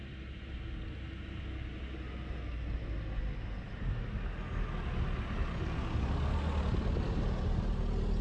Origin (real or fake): real